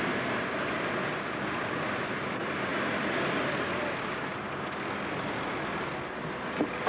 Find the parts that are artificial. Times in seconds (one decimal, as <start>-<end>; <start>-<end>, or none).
none